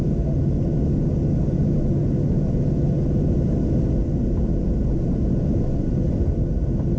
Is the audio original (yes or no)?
yes